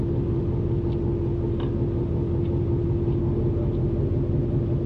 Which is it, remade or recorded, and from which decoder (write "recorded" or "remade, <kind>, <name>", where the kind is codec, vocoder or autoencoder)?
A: recorded